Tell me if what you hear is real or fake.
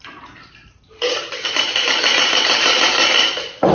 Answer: fake